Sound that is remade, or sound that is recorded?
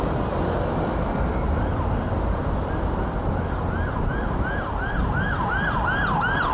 recorded